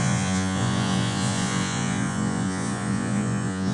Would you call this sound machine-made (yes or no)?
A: yes